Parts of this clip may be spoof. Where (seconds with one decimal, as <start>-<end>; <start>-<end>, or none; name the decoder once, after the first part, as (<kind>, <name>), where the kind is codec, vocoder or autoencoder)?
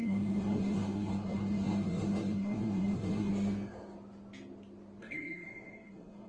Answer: 0.0-3.3 (codec, SNAC); 5.0-6.3